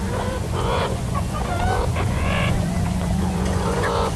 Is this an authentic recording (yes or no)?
no